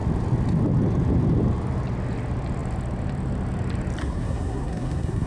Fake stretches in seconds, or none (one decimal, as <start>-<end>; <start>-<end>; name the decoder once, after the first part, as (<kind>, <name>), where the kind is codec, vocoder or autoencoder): 4.0-5.3 (codec, SNAC)